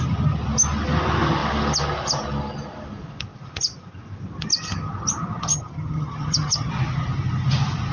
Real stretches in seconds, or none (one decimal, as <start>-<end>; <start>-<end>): 0.0-5.5; 6.7-7.9